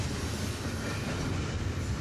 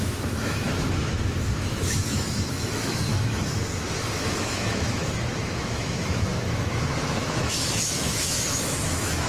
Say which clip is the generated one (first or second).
second